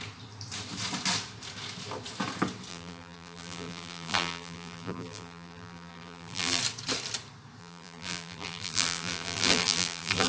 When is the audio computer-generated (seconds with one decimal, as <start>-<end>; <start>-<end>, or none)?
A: 2.7-6.6; 7.6-10.3